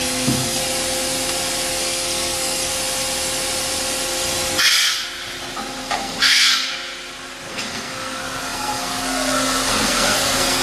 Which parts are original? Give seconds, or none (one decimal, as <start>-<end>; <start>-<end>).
0.6-1.7; 2.7-5.8; 6.7-7.5